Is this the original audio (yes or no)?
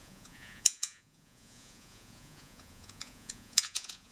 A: no